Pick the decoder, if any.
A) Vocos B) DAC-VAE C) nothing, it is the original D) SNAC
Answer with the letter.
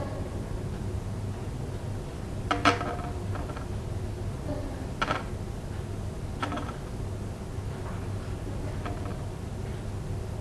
C